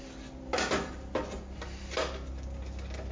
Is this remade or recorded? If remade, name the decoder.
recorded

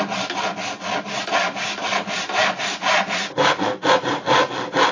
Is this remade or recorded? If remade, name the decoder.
recorded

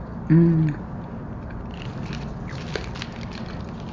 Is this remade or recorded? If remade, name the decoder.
recorded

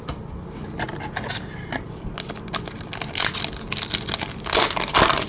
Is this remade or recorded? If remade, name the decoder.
recorded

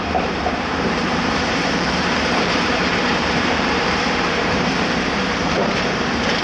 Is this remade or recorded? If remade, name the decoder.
remade, vocoder, BigVGAN v2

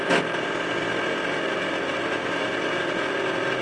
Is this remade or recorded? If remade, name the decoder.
recorded